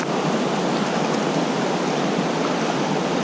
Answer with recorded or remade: recorded